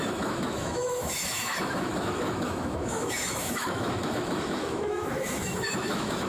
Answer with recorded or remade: remade